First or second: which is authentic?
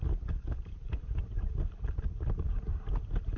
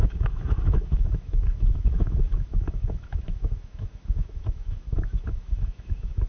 first